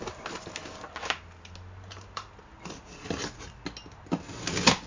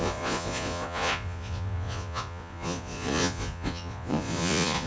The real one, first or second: first